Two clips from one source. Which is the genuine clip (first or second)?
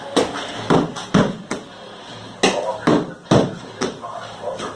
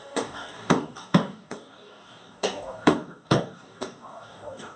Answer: first